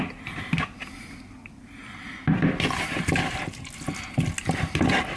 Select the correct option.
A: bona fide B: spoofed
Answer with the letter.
A